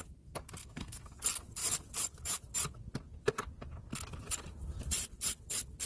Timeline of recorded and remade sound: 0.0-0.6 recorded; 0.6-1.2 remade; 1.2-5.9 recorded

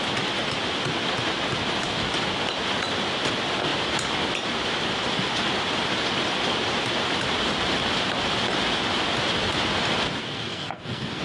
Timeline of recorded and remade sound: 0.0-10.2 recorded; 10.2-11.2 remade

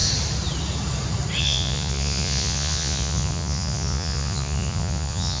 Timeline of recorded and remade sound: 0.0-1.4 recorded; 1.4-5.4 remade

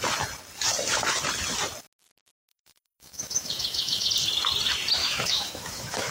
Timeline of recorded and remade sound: 0.0-2.5 recorded; 2.5-4.1 remade; 4.1-5.0 recorded; 5.0-6.1 remade